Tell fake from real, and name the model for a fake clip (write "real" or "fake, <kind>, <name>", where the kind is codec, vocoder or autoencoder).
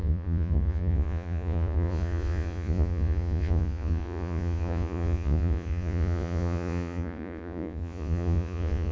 fake, vocoder, Vocos